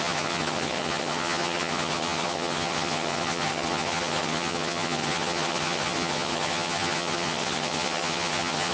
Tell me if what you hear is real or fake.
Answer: fake